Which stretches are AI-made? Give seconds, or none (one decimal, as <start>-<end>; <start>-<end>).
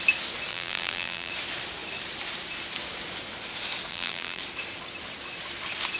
0.5-1.3; 3.9-4.4